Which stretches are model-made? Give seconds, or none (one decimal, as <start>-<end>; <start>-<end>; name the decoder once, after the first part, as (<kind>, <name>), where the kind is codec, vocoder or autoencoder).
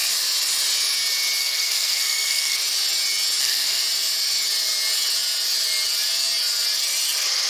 1.4-2.6 (codec, SNAC); 3.4-3.8